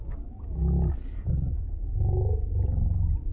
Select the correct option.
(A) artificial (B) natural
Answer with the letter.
B